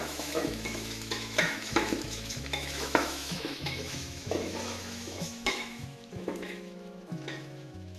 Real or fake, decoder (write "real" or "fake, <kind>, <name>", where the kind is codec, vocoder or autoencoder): fake, autoencoder, DAC-VAE